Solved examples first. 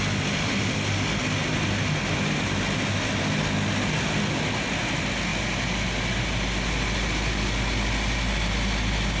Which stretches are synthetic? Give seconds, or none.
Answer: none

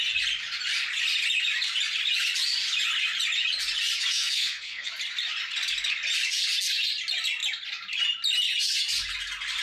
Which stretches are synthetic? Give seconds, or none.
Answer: 4.1-4.9 (codec, SNAC)

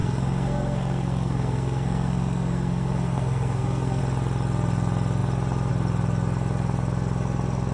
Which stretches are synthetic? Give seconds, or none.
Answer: 0.0-4.0 (codec, SNAC)

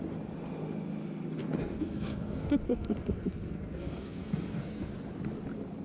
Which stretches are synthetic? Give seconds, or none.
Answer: 1.4-4.9 (codec, SNAC)

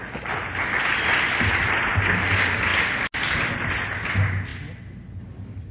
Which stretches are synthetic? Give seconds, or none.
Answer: none

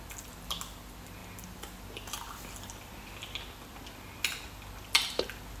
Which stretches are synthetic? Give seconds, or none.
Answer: none

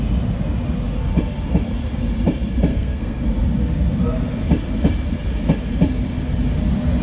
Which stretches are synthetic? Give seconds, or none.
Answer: 2.7-3.2 (codec, SNAC)

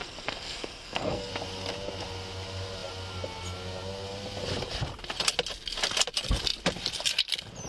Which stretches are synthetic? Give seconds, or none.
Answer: 0.0-1.3 (codec, SNAC)